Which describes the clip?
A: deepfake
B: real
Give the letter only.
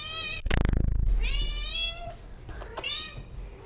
B